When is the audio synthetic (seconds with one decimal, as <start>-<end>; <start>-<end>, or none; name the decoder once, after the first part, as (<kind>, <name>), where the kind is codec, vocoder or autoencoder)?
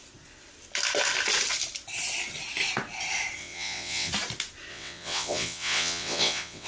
3.4-4.1 (vocoder, WaveNeXt); 4.7-6.7